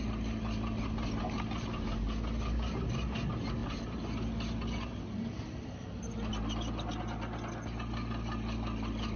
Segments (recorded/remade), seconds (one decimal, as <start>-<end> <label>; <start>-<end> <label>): 0.0-9.2 recorded